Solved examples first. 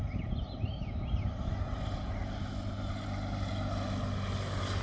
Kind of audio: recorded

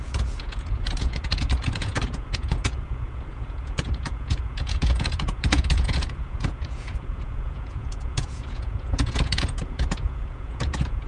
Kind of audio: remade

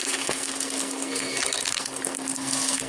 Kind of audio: remade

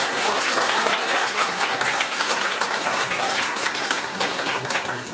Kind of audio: remade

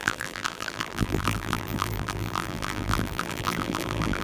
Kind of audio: remade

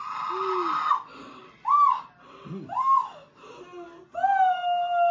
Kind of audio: recorded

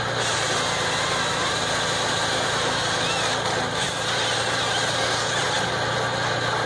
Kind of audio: recorded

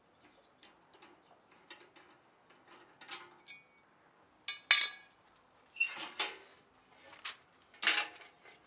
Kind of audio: recorded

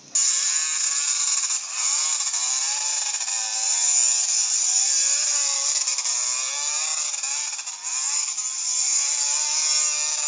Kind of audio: recorded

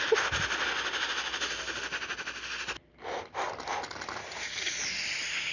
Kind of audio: recorded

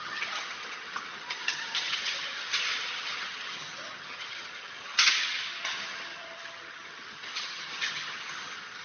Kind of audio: remade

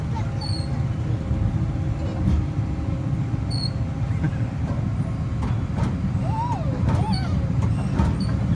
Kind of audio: recorded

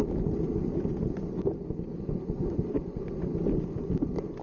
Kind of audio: recorded